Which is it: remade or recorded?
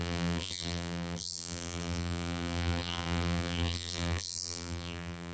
remade